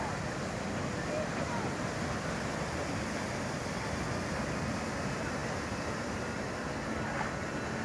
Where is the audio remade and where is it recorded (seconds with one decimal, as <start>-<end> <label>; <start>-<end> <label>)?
0.0-7.8 recorded